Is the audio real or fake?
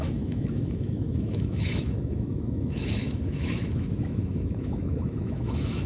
fake